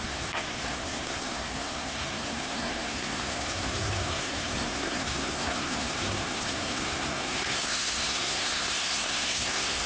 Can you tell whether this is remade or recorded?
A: remade